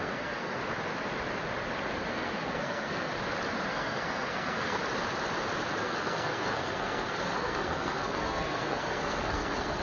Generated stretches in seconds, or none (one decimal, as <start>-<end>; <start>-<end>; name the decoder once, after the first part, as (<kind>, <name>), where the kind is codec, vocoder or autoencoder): 0.0-0.6 (codec, SNAC); 2.1-3.1; 3.7-4.8; 5.8-9.8